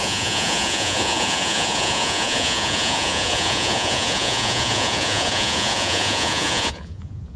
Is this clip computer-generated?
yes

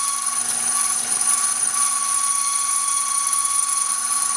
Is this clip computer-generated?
no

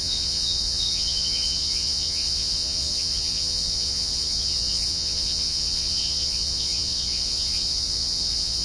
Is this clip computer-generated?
yes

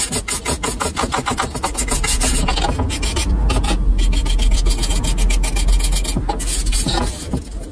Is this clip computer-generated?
no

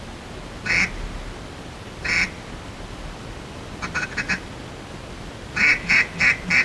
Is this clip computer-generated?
no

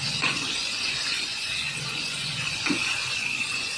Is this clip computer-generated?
yes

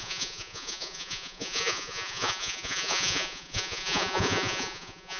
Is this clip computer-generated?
yes